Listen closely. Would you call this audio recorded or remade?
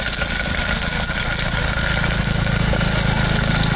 recorded